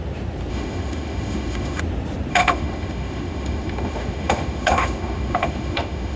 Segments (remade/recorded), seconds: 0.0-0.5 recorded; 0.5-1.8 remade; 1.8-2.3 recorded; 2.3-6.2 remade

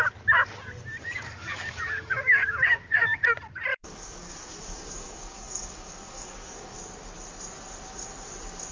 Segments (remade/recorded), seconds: 0.0-1.0 recorded; 1.0-3.3 remade; 3.3-3.7 recorded; 3.7-6.8 remade; 6.8-8.7 recorded